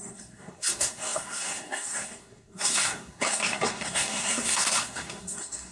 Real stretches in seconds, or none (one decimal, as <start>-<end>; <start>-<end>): none